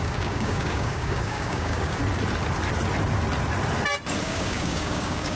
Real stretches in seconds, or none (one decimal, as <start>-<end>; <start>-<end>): 2.0-4.2